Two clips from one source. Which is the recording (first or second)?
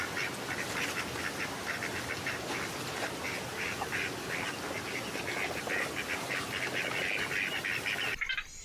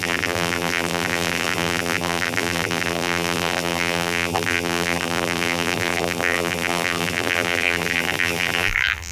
first